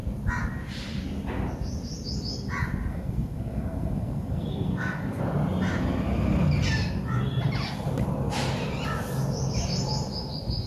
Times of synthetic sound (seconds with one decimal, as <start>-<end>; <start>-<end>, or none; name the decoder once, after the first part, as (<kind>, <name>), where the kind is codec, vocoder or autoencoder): 2.9-5.2 (codec, SNAC)